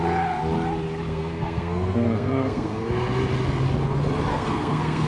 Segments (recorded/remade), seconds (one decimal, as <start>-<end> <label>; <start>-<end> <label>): 0.0-1.1 recorded; 1.1-2.9 remade; 2.9-4.3 recorded; 4.3-5.1 remade